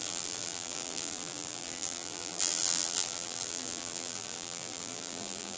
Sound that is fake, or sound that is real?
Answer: fake